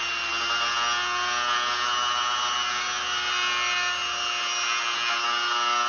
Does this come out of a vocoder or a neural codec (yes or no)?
no